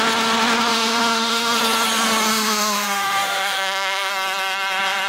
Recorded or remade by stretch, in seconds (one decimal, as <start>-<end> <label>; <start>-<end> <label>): 0.0-0.7 recorded; 0.7-1.6 remade; 1.6-2.3 recorded; 2.3-4.1 remade; 4.1-5.1 recorded